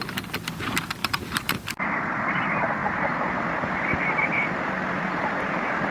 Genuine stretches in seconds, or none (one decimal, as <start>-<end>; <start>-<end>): 0.0-1.0; 1.8-5.9